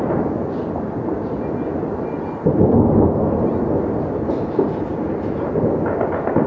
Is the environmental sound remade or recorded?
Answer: recorded